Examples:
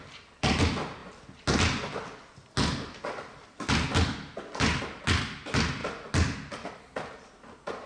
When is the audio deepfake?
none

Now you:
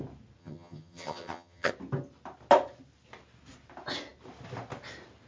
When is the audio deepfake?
0.4-1.7

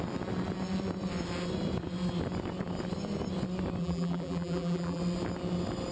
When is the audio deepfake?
3.8-5.0

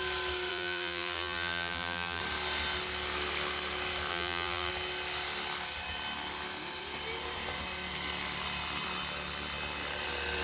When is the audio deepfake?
0.5-2.2; 4.1-4.7